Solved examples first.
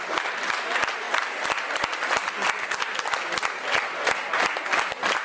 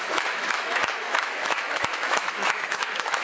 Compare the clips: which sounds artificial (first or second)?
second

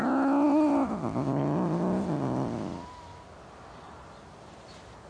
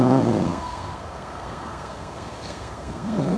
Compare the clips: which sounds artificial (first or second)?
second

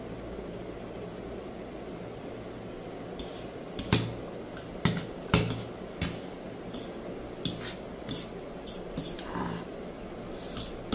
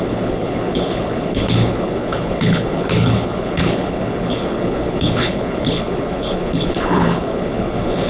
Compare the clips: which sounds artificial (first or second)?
second